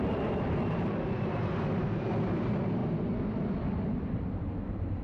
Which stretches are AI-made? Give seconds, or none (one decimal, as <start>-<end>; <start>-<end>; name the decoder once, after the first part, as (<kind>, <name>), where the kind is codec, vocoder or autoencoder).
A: none